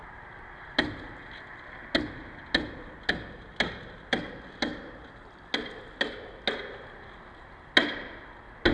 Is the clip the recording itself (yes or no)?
yes